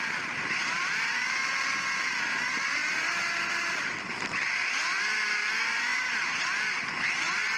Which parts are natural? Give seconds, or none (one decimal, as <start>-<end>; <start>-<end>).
1.4-2.2